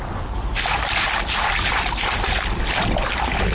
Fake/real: real